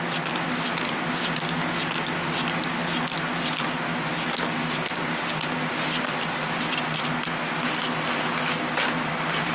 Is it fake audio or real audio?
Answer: real